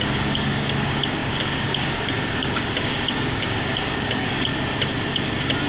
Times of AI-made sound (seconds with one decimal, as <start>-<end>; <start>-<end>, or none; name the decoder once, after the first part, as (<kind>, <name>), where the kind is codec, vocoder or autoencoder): 0.0-4.5 (codec, DAC)